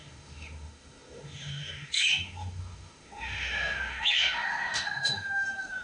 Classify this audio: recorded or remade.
remade